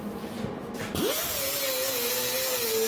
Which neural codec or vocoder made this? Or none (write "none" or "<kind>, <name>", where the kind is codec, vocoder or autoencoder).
none